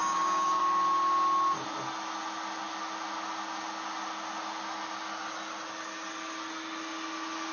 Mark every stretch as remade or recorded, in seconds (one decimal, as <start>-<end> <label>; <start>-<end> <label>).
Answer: 0.0-0.6 remade; 0.6-7.5 recorded